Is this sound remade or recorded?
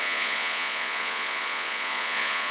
remade